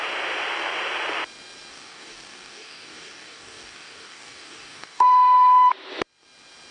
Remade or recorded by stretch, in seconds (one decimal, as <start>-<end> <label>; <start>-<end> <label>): 0.0-1.7 recorded; 1.7-5.7 remade; 5.7-6.7 recorded